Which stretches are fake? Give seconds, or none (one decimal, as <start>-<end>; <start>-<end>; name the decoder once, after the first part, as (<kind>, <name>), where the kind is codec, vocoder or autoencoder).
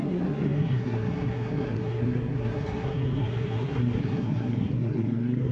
0.0-5.5 (codec, SNAC)